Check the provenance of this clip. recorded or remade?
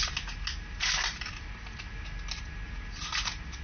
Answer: recorded